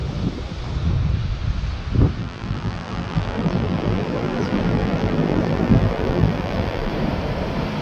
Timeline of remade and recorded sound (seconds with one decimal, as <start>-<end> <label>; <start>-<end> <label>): 0.0-2.2 recorded; 2.2-6.9 remade; 6.9-7.8 recorded